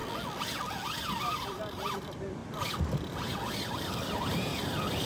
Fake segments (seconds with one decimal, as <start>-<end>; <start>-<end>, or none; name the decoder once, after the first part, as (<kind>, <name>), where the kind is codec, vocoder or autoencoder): 1.2-2.4 (vocoder, BigVGAN v2); 3.7-4.5